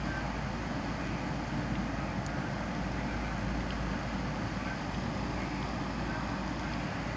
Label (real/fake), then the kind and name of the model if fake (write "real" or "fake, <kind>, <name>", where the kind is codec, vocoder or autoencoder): real